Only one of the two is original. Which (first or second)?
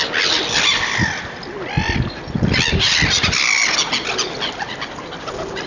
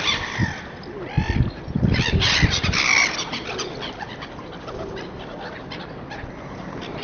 first